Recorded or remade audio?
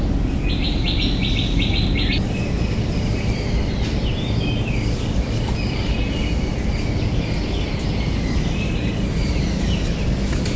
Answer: recorded